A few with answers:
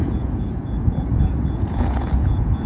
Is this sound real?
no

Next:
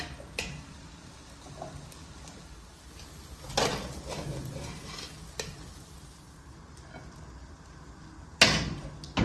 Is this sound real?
yes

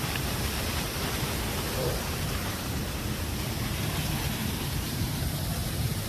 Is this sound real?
no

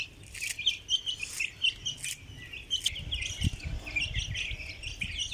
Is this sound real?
yes